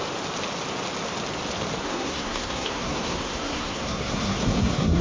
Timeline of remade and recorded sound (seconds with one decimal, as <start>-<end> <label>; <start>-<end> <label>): 0.0-1.8 recorded; 1.8-5.0 remade